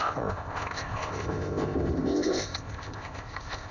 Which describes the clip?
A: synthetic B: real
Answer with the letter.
A